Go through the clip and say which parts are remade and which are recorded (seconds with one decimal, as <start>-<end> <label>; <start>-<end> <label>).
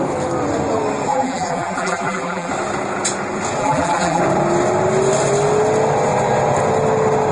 0.0-1.1 recorded; 1.1-2.5 remade; 2.5-3.6 recorded; 3.6-4.2 remade; 4.2-7.3 recorded